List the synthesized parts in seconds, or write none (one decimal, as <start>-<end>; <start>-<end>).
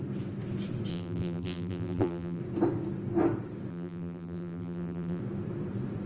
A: 0.9-2.4; 3.7-5.2